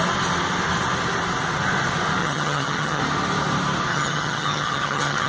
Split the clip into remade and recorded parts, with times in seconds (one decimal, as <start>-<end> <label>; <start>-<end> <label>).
0.0-2.2 recorded; 2.2-3.0 remade; 3.0-3.9 recorded; 3.9-5.3 remade